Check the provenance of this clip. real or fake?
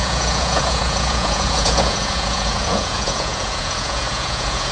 fake